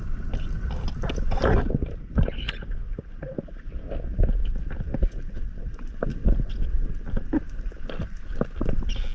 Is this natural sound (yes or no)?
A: yes